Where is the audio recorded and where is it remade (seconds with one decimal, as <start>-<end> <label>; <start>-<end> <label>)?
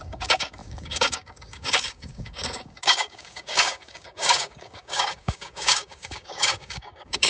0.0-7.3 remade